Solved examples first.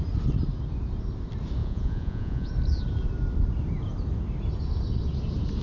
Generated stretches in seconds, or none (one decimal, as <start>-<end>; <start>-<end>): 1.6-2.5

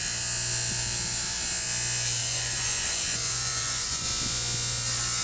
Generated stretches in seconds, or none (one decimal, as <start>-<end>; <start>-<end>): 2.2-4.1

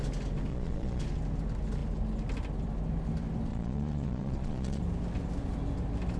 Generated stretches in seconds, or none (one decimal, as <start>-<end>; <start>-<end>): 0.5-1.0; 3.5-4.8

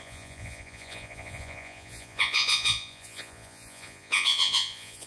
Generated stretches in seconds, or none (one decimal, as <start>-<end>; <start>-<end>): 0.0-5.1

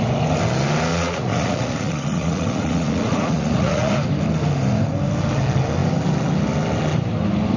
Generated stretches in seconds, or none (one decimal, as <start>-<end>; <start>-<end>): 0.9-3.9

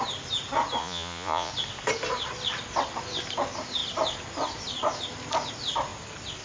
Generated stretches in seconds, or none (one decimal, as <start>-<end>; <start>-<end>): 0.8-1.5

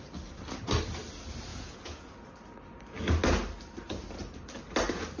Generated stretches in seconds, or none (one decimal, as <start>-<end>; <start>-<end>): 1.5-2.1